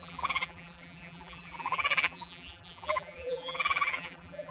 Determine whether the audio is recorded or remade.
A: remade